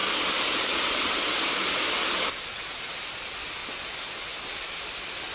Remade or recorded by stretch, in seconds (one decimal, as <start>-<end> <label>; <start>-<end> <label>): 0.0-5.3 recorded